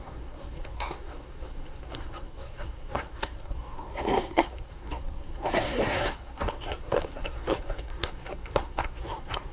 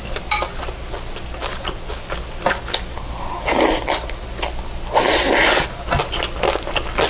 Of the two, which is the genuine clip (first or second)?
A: second